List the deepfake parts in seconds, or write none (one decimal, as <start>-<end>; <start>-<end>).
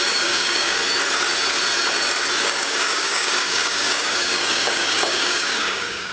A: 0.0-0.8; 2.4-6.1